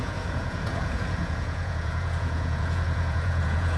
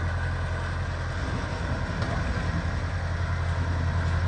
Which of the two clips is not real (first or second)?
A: first